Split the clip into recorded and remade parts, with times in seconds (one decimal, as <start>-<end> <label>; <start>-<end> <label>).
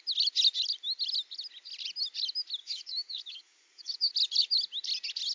0.0-2.6 recorded; 2.6-4.1 remade; 4.1-5.3 recorded